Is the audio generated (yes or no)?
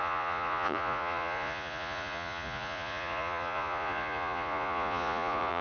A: yes